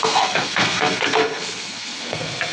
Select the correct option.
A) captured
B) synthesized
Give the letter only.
B